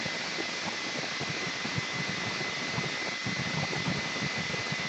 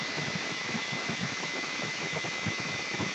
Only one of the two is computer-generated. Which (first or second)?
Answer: second